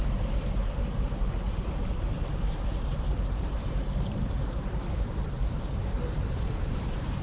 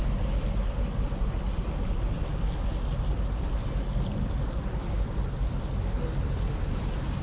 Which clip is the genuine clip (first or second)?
second